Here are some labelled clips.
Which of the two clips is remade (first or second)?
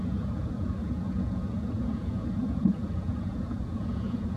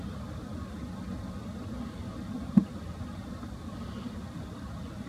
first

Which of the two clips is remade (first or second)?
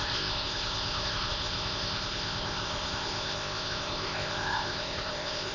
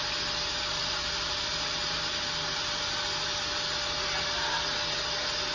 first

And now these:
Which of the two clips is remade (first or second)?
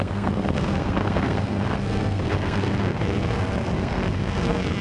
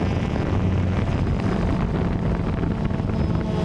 first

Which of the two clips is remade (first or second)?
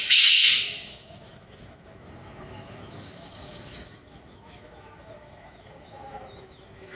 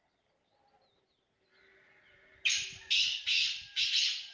first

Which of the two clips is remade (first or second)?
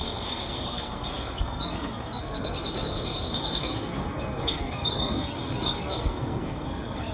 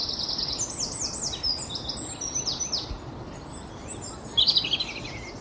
first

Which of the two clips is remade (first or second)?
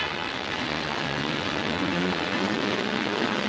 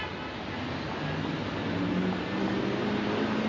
first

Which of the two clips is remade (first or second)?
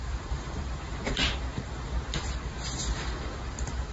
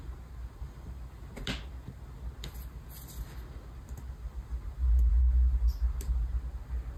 first